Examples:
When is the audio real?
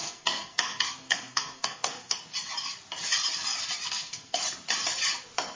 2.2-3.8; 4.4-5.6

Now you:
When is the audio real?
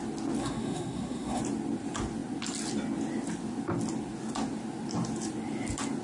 0.0-0.4; 1.4-6.0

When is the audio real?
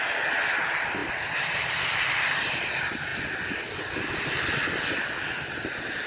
0.0-6.1